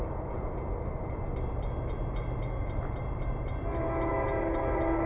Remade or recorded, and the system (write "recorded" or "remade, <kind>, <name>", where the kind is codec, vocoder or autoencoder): recorded